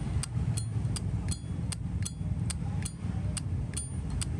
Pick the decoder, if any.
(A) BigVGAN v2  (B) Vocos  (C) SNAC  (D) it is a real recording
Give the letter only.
D